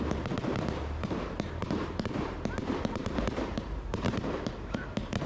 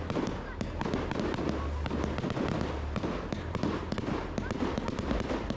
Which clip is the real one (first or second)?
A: second